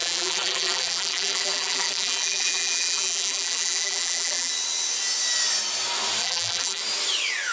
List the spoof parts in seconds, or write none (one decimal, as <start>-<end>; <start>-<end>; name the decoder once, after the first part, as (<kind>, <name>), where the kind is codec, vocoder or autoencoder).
0.0-4.5 (vocoder, BigVGAN v2); 6.2-6.8